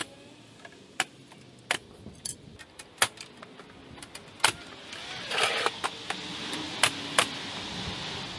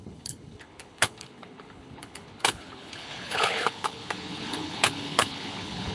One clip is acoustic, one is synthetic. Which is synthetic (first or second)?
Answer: second